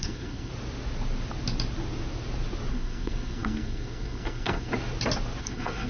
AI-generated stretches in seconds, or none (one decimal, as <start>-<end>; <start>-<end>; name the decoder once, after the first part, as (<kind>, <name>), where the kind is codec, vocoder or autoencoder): 0.0-0.5 (codec, SNAC); 2.7-4.7; 5.4-5.9